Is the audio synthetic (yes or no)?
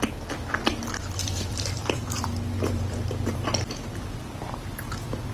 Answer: yes